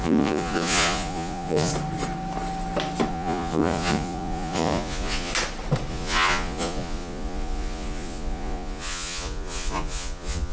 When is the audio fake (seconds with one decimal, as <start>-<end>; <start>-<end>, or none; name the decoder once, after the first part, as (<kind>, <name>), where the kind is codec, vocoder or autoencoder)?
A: 0.0-1.7 (vocoder, Vocos); 3.1-5.3; 5.9-10.5